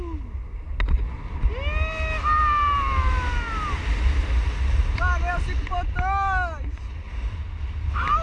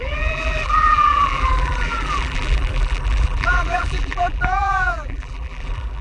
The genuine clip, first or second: first